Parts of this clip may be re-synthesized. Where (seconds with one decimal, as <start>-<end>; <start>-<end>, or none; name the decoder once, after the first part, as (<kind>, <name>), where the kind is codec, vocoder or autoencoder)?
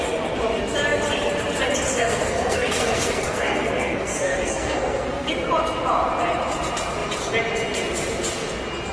1.9-5.3 (codec, SNAC)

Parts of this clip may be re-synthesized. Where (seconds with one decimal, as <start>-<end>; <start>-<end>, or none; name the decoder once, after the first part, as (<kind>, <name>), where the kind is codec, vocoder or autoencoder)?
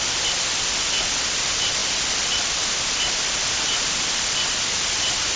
none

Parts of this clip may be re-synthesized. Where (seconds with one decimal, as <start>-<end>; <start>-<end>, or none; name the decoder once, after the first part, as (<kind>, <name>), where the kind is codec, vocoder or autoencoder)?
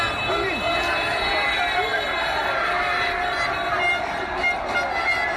none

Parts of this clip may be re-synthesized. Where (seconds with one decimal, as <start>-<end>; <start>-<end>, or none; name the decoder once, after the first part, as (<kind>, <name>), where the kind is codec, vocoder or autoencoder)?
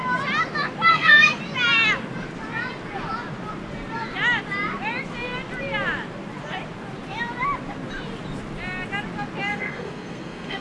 0.9-1.4 (codec, SNAC); 9.5-10.6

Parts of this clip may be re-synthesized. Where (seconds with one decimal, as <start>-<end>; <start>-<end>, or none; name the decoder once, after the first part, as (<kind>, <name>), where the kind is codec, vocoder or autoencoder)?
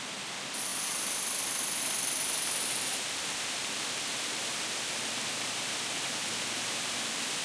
none